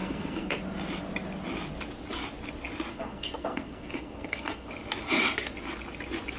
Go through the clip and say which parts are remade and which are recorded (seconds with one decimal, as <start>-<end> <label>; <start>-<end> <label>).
0.0-0.6 remade; 0.6-2.9 recorded; 2.9-4.7 remade; 4.7-6.4 recorded